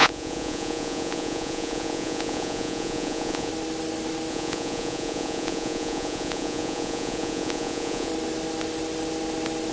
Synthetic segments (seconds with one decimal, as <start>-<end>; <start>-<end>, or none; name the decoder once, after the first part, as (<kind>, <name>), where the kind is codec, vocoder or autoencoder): 0.0-3.5 (vocoder, Vocos); 4.3-8.1